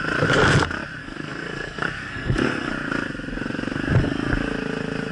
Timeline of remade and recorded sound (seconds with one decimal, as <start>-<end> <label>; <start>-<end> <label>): 0.0-1.0 recorded; 1.0-2.7 remade; 2.7-5.1 recorded